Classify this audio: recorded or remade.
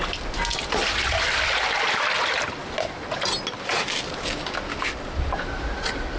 recorded